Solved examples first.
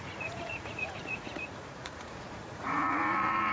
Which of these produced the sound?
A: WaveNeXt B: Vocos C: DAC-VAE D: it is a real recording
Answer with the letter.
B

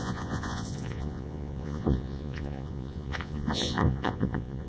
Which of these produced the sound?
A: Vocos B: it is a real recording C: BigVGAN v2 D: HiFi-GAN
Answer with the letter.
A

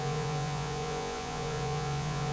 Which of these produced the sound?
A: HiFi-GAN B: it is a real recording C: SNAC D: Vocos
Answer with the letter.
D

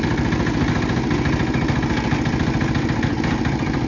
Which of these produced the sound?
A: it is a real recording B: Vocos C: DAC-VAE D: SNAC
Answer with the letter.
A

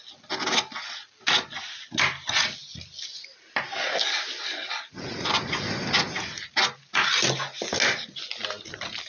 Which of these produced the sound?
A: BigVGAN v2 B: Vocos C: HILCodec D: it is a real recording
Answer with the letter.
D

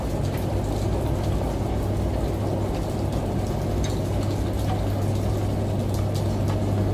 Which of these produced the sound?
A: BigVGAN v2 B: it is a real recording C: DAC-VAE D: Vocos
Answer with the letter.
B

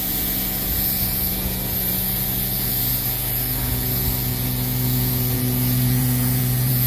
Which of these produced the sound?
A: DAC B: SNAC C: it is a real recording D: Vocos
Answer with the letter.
D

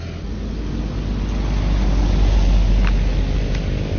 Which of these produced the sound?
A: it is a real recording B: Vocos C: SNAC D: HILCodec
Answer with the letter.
A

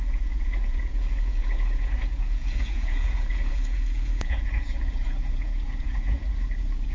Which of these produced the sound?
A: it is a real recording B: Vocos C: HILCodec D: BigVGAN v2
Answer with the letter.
B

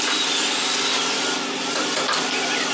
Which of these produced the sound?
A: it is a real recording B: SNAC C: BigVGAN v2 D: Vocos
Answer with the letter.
A